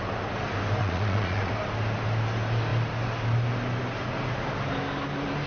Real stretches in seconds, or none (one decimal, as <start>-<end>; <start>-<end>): 0.0-0.8; 1.5-5.5